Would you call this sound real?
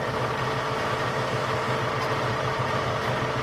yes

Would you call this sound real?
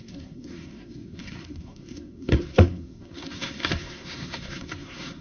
no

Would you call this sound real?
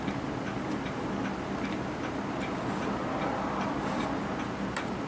yes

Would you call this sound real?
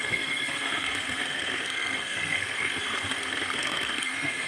no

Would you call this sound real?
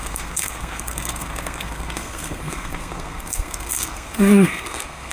no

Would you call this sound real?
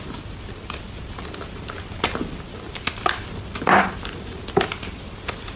yes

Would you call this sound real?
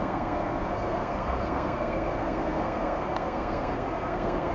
no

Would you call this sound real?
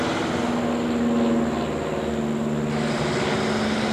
yes